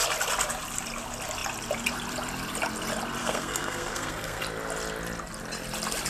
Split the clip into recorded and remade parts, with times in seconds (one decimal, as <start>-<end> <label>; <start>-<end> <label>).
0.0-3.2 recorded; 3.2-4.4 remade; 4.4-6.1 recorded